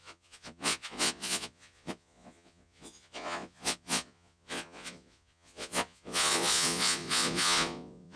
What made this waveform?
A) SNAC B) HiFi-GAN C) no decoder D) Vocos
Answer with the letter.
D